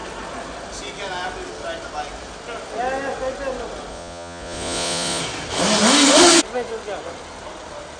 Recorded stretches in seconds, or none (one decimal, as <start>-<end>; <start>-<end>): 0.0-3.9; 5.2-8.0